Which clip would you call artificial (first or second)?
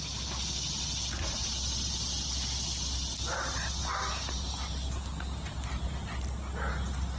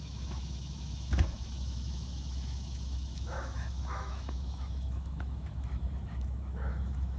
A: second